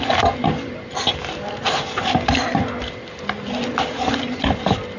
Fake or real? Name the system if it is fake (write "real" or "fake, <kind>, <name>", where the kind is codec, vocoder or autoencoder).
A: real